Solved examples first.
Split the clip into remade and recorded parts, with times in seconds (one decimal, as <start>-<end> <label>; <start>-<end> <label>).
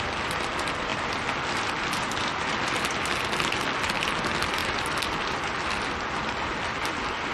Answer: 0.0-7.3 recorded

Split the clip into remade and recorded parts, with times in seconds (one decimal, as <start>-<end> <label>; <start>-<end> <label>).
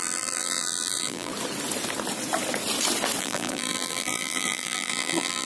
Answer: 0.0-1.3 remade; 1.3-3.2 recorded; 3.2-5.5 remade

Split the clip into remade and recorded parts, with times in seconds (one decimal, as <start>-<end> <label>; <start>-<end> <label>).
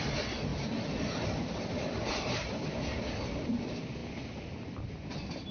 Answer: 0.0-0.5 recorded; 0.5-3.5 remade; 3.5-4.0 recorded; 4.0-5.1 remade; 5.1-5.5 recorded